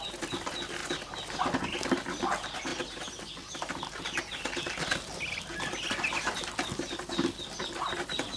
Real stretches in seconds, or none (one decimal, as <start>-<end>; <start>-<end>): 0.0-8.4